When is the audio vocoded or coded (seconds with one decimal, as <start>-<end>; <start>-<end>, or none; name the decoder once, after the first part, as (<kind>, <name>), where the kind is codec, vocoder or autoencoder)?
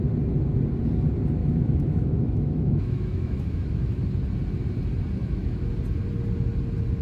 1.4-4.0 (autoencoder, DAC-VAE); 5.2-5.7